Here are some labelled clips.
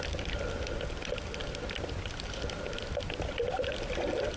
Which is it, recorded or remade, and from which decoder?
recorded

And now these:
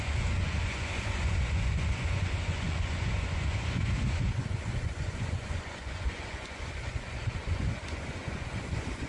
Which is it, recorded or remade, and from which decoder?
remade, vocoder, Vocos